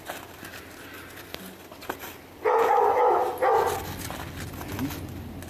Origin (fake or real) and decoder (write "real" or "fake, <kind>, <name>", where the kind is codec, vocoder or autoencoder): real